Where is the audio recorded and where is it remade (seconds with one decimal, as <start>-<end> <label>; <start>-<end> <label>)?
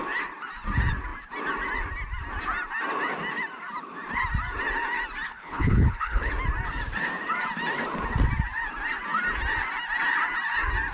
0.0-5.3 recorded; 5.3-6.3 remade; 6.3-10.9 recorded